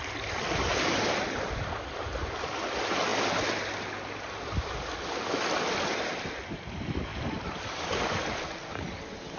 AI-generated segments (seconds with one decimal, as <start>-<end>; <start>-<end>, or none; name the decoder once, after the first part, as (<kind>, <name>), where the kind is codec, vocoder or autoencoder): 7.1-8.0 (vocoder, BigVGAN v2)